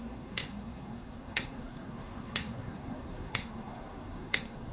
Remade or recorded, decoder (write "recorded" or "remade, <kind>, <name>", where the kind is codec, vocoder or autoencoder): remade, codec, SNAC